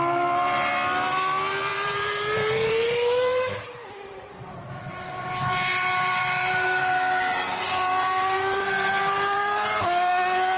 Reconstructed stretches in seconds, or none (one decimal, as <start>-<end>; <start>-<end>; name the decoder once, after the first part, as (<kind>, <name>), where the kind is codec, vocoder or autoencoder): 1.7-4.7 (vocoder, BigVGAN v2); 5.7-10.1